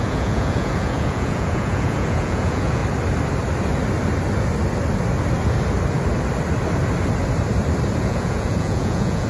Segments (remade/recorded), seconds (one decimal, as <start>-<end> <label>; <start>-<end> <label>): 0.0-2.8 remade; 2.8-8.0 recorded; 8.0-9.3 remade